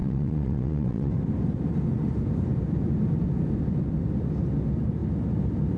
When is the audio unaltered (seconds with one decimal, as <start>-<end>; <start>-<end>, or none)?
1.1-5.8